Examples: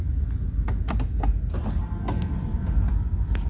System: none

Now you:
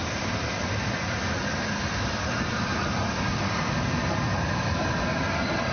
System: none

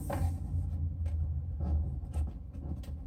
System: none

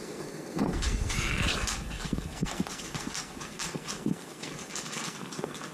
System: codec, SNAC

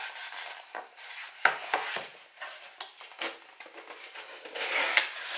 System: none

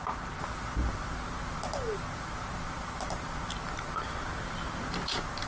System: none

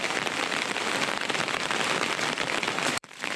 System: vocoder, BigVGAN v2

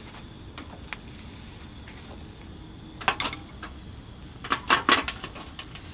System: none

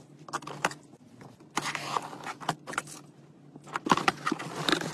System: none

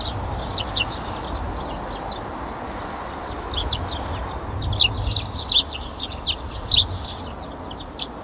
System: none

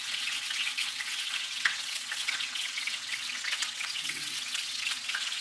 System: vocoder, WaveNeXt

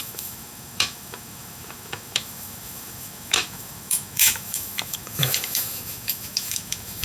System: autoencoder, DAC-VAE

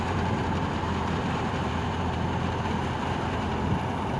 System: vocoder, BigVGAN v2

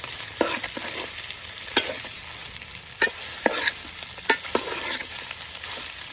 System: none